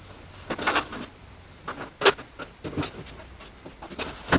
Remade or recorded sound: recorded